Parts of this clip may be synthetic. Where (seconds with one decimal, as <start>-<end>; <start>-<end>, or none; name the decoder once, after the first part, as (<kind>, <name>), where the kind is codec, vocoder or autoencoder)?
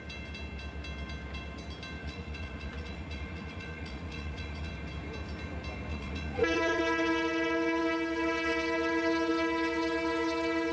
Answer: 2.0-4.7 (vocoder, Vocos); 5.9-6.8